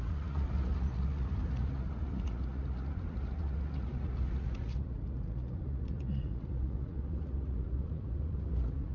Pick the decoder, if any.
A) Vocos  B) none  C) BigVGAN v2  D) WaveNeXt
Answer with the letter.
A